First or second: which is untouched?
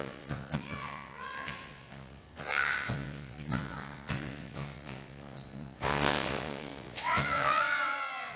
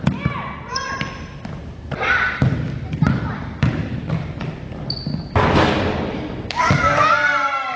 second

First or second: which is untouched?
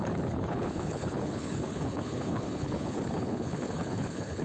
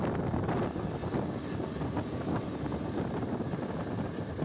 second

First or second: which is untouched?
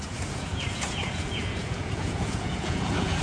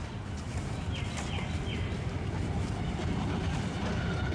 second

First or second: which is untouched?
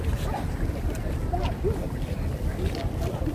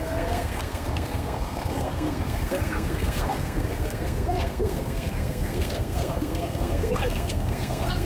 first